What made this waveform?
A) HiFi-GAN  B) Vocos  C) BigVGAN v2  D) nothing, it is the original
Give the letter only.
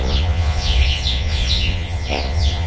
B